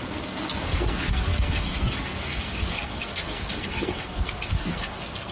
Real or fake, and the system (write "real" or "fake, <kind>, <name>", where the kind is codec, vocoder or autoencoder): fake, codec, SNAC